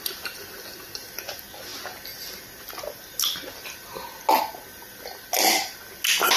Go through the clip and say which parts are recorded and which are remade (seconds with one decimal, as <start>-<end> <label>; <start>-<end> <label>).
0.0-6.4 recorded